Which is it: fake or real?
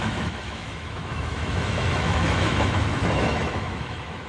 fake